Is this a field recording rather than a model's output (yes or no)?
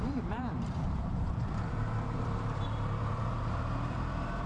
no